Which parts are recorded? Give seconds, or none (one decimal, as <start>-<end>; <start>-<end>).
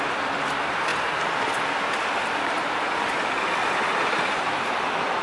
0.9-3.4